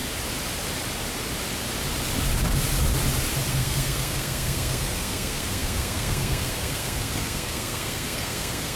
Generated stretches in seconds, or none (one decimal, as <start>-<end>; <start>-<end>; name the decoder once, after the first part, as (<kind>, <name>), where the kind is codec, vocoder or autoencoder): 3.5-8.8 (codec, SNAC)